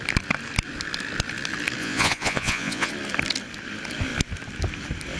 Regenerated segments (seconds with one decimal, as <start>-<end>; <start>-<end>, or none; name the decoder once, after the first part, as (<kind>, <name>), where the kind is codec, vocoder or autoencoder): 1.8-2.9 (vocoder, Vocos)